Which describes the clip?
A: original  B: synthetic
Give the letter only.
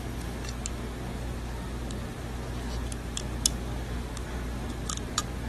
A